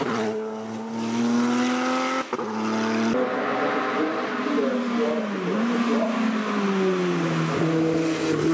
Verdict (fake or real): real